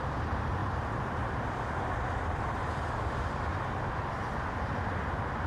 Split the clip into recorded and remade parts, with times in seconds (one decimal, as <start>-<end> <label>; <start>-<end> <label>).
0.0-0.6 recorded; 0.6-1.4 remade; 1.4-3.5 recorded; 3.5-4.1 remade; 4.1-5.5 recorded